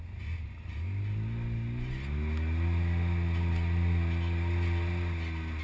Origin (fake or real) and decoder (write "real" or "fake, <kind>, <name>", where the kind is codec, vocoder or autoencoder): real